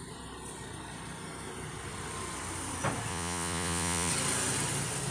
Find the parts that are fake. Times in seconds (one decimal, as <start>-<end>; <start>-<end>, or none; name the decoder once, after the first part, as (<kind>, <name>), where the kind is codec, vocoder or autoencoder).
3.1-4.1 (vocoder, Vocos)